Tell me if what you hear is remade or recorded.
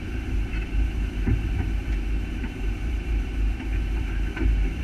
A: remade